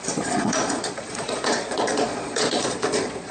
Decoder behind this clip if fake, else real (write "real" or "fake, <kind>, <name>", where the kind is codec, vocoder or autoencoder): fake, vocoder, Vocos